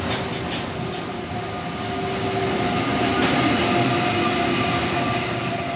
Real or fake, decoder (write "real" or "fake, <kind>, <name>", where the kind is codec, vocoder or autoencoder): real